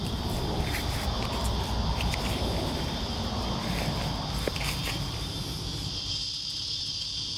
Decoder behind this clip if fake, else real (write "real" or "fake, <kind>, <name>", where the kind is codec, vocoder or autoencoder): fake, vocoder, BigVGAN v2